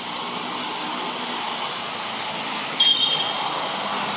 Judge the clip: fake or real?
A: real